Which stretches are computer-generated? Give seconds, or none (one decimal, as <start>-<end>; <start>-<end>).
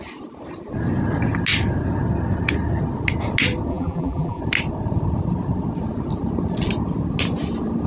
3.7-4.4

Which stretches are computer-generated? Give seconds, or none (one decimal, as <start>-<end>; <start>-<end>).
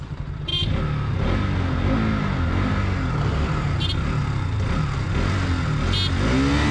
none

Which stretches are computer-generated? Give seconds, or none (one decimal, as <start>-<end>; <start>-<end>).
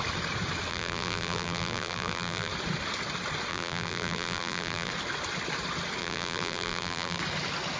0.7-2.5; 3.5-4.9; 6.0-7.2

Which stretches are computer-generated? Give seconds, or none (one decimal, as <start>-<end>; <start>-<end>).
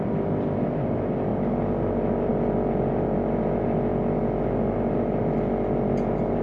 none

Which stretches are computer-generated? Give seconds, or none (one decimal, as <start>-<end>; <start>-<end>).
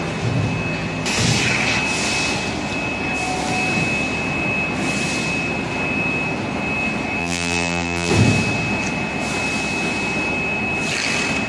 7.2-8.1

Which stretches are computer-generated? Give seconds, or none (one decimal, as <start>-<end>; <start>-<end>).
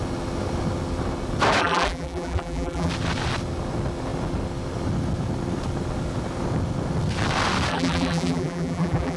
1.6-2.9; 7.7-9.2